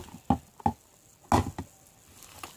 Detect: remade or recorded recorded